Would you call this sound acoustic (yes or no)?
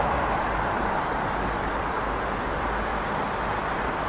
yes